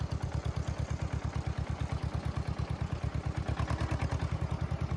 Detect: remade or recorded recorded